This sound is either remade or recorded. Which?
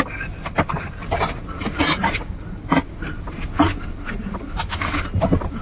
remade